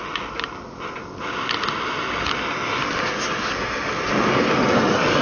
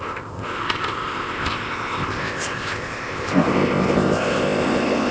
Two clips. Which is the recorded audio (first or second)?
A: first